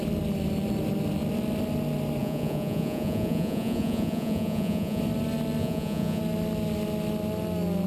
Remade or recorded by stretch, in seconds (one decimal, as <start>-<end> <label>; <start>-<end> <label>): 0.0-2.2 recorded; 2.2-5.0 remade; 5.0-5.6 recorded; 5.6-6.2 remade; 6.2-7.9 recorded